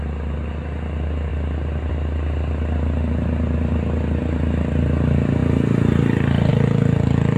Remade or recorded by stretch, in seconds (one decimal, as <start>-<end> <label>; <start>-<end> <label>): 0.0-7.4 recorded